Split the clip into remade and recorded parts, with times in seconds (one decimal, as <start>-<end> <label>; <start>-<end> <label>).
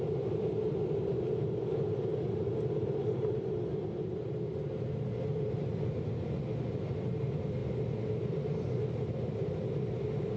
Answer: 0.0-10.4 recorded